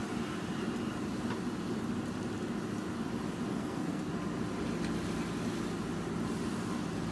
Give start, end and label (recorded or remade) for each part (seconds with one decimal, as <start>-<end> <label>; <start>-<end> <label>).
0.0-3.5 recorded; 3.5-4.1 remade; 4.1-7.1 recorded